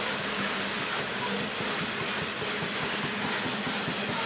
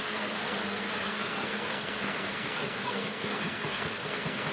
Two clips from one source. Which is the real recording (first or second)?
first